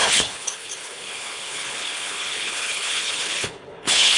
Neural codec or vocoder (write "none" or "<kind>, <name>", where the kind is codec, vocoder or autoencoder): codec, HILCodec